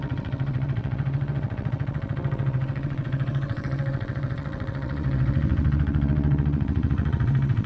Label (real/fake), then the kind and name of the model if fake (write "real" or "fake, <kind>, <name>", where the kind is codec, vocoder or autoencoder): fake, vocoder, WaveNeXt